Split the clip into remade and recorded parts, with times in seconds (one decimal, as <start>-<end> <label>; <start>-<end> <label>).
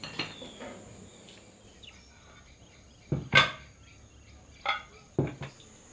0.0-5.9 recorded